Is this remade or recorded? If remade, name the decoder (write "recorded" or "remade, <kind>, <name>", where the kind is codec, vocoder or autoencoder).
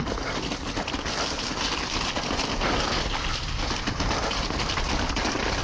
recorded